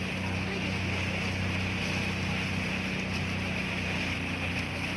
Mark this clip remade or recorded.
recorded